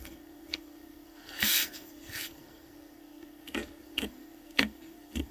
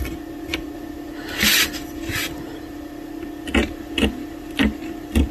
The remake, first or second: first